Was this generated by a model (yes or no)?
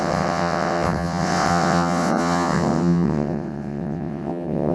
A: yes